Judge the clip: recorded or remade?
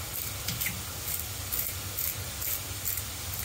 recorded